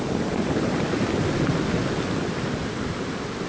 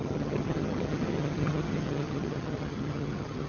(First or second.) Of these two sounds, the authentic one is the first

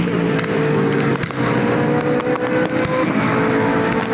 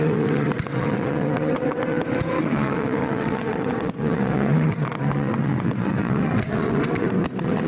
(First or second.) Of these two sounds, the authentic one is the first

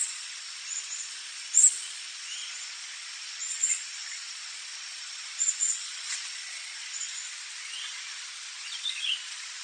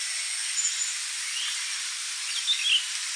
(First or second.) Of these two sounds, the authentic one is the second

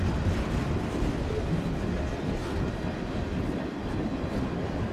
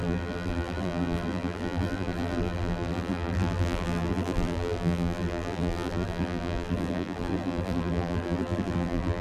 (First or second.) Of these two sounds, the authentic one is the first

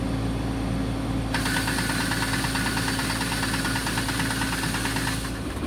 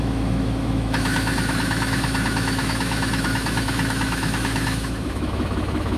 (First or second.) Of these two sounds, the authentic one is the first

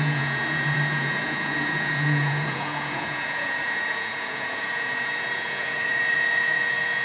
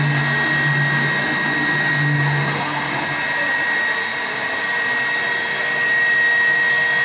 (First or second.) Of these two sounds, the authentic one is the second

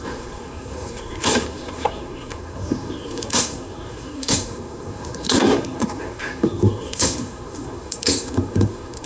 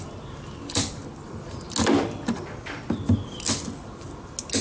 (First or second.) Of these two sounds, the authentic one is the second